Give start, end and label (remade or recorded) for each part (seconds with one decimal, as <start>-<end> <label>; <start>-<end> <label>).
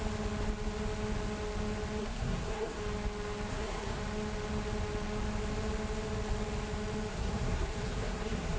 0.0-2.0 recorded; 2.0-2.8 remade; 2.8-3.5 recorded; 3.5-4.0 remade; 4.0-7.1 recorded; 7.1-8.6 remade